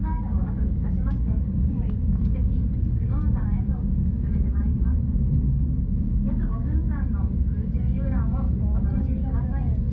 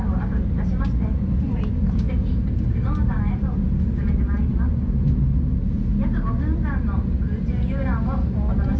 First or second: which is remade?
first